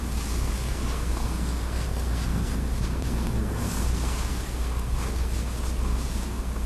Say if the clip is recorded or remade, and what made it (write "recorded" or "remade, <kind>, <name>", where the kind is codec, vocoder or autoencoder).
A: remade, codec, SNAC